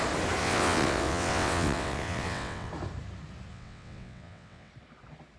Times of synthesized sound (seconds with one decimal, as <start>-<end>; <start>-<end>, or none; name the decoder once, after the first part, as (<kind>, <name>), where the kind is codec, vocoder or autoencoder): 0.4-2.7 (vocoder, WaveNeXt); 3.5-4.7